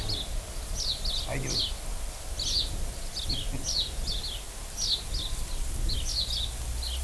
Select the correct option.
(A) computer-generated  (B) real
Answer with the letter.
B